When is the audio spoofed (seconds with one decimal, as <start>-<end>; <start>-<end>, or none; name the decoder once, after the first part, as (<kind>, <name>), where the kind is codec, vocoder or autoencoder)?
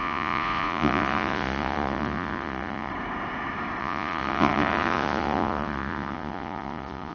0.0-2.9 (vocoder, Vocos); 3.8-7.1